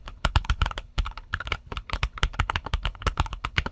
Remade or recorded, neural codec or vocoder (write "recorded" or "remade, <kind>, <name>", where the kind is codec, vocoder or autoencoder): remade, codec, HILCodec